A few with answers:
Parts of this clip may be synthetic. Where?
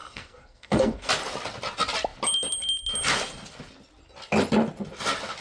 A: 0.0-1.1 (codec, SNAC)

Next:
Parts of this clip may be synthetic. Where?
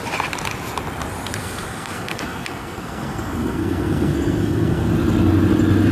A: 1.4-4.9 (codec, SNAC)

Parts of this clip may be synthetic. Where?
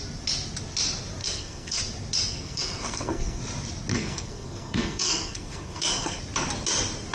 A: 1.2-1.8 (codec, SNAC); 2.3-3.4; 3.9-6.2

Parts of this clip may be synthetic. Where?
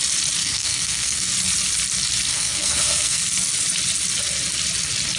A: 0.4-1.3 (codec, SNAC); 2.3-3.2